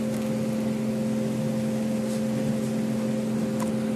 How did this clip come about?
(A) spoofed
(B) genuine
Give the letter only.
B